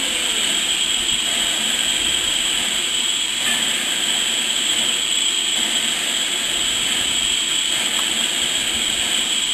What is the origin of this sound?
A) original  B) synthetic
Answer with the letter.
B